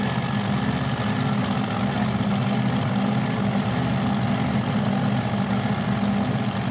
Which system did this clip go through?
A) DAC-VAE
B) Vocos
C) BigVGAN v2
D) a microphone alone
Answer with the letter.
D